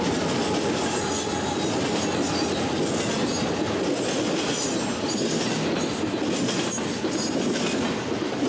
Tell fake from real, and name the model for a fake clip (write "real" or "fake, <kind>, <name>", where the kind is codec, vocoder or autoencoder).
real